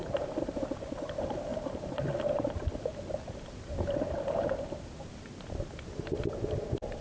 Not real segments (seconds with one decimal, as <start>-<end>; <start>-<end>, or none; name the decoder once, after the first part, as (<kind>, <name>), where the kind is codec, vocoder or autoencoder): none